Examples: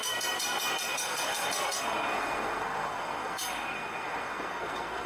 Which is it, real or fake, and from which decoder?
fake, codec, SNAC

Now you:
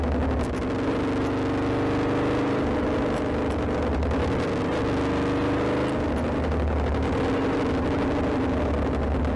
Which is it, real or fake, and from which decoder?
real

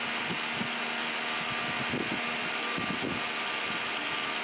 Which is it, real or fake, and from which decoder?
real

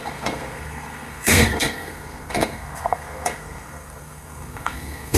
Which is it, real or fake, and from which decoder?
fake, codec, SNAC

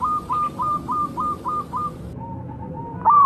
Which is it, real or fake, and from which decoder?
real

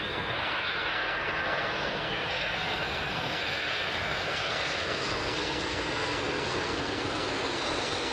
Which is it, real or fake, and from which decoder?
fake, codec, SNAC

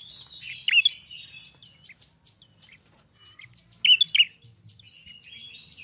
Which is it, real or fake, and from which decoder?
real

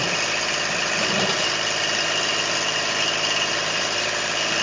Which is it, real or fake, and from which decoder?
real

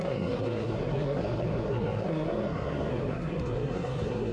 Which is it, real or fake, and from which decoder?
fake, codec, SNAC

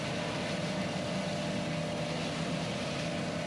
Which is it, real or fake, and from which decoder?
real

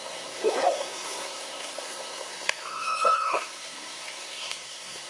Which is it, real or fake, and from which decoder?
fake, codec, SNAC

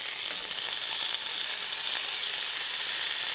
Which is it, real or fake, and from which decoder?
real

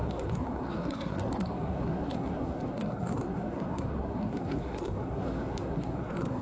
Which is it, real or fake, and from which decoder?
fake, codec, SNAC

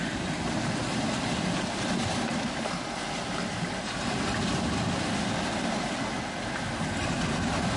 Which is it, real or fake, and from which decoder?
real